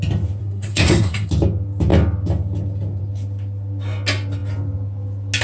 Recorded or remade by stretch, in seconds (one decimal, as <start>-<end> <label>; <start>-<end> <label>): 0.0-0.4 recorded; 0.4-1.3 remade; 1.3-5.4 recorded